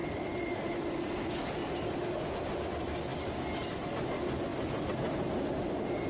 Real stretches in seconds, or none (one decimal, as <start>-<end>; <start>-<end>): 0.0-0.7

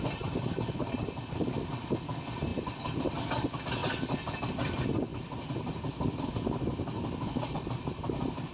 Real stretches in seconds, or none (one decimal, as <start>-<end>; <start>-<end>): 0.0-8.5

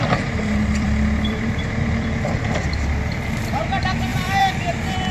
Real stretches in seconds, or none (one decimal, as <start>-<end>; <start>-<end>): none

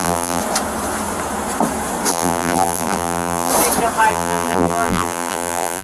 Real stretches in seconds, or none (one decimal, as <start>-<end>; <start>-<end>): 0.4-2.1; 3.5-4.1

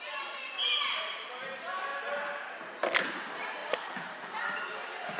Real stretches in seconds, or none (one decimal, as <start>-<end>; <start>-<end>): 0.0-3.6; 4.6-5.2

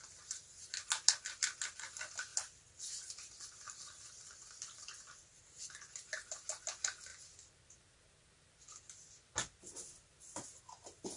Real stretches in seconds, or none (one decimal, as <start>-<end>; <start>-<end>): 0.0-2.3; 5.4-11.2

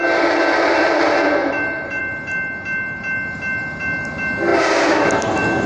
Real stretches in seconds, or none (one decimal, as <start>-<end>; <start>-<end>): 0.0-1.4; 2.0-5.7

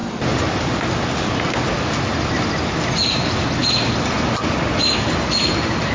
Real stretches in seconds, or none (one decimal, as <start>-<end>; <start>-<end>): 0.0-5.9